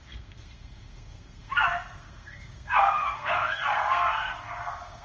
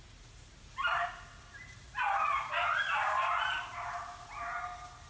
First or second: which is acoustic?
second